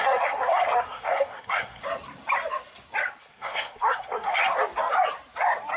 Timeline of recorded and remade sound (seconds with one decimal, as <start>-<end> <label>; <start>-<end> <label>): 0.0-1.8 remade; 1.8-3.2 recorded; 3.2-4.4 remade; 4.4-5.8 recorded